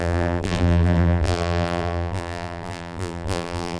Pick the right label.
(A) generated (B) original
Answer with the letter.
A